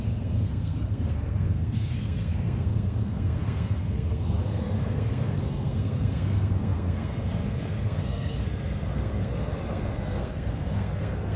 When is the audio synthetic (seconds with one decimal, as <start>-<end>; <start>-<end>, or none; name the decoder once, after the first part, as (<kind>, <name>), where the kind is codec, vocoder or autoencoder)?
0.0-11.4 (codec, SNAC)